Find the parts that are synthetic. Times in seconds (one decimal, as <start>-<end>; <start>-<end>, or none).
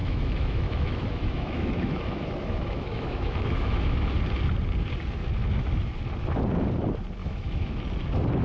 0.0-4.1; 7.2-7.8